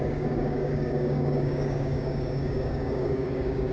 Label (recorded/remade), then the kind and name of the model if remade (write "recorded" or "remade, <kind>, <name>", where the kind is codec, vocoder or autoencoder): remade, codec, DAC